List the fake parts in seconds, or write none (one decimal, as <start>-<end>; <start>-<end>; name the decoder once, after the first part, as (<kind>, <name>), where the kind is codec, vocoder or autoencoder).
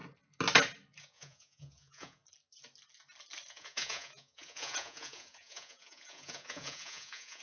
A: 1.0-2.2 (vocoder, Vocos); 3.5-7.4